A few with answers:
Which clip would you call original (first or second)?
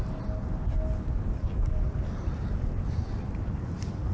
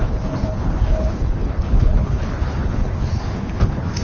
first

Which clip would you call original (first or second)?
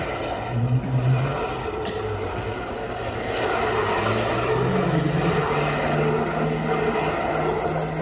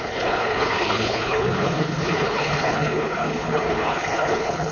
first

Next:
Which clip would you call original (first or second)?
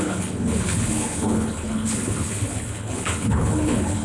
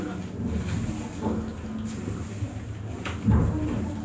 second